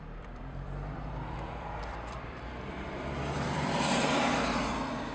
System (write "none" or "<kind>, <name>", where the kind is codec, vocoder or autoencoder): vocoder, BigVGAN v2